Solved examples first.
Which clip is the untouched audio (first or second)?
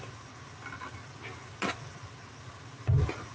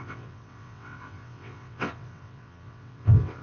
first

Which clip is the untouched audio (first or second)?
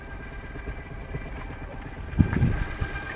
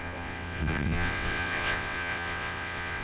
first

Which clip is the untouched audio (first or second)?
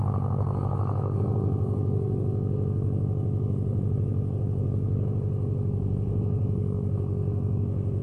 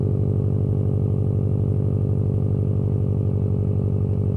second